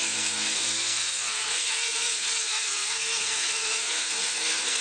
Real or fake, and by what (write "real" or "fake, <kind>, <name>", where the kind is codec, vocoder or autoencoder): fake, codec, SNAC